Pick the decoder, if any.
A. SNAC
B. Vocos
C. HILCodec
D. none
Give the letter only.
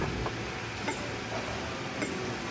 D